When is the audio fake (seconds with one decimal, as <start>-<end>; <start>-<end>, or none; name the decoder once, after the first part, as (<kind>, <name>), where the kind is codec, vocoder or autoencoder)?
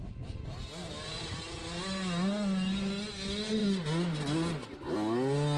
none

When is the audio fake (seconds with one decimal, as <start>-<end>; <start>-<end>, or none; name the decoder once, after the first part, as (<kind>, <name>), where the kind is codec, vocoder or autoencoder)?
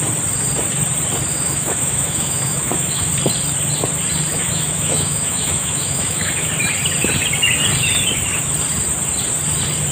1.3-3.1 (autoencoder, DAC-VAE); 4.3-6.5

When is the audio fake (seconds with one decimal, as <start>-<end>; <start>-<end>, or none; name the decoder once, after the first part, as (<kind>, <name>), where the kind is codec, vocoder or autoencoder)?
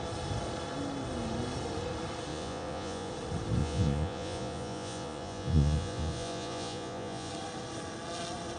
2.3-3.1 (vocoder, Vocos); 3.6-7.3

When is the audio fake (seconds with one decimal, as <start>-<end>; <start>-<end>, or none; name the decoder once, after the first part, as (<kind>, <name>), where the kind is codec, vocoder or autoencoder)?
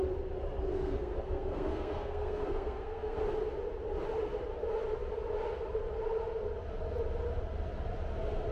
0.7-3.2 (codec, SNAC)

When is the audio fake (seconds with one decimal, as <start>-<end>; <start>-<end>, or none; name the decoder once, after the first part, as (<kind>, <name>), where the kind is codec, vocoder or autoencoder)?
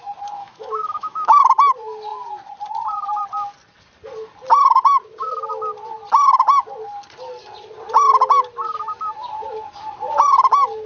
0.4-1.4 (autoencoder, DAC-VAE)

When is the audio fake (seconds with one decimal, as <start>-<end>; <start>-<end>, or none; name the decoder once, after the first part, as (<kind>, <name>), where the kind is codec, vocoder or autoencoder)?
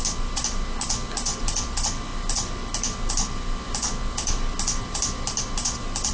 none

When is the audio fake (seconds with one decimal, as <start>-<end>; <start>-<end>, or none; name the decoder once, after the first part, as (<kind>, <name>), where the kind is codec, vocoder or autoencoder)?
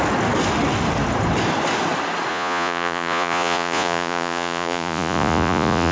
2.3-5.9 (vocoder, Vocos)